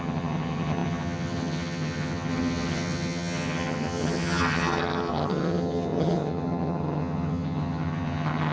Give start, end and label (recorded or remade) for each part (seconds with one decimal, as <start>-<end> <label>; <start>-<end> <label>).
0.0-8.5 remade